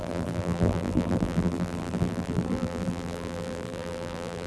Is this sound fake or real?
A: fake